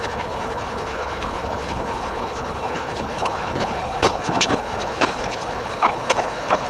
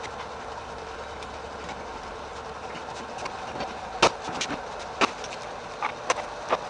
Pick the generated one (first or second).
first